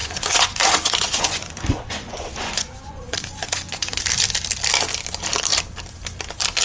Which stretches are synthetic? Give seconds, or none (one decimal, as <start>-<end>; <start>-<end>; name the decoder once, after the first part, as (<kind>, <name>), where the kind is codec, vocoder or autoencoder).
0.0-4.0 (vocoder, Vocos)